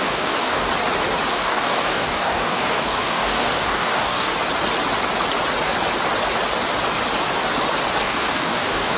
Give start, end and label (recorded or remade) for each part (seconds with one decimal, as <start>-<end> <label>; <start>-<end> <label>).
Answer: 0.0-0.7 remade; 0.7-1.3 recorded; 1.3-4.3 remade; 4.3-8.0 recorded; 8.0-9.0 remade